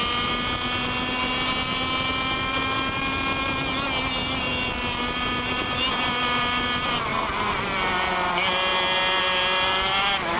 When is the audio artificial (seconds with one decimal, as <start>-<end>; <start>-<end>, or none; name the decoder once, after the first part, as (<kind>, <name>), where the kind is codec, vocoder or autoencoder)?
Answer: none